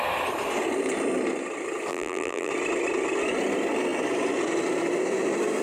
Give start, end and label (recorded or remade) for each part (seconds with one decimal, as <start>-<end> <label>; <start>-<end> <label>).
0.0-1.9 recorded; 1.9-2.5 remade; 2.5-5.6 recorded